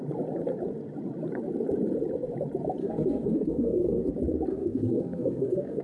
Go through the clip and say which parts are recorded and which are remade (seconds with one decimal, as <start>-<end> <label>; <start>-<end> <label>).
0.0-2.8 recorded; 2.8-4.1 remade; 4.1-4.5 recorded; 4.5-5.8 remade